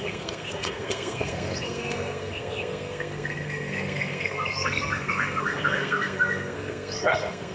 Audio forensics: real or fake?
fake